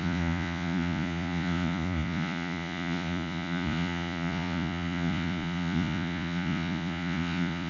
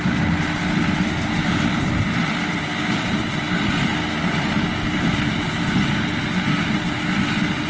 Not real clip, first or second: first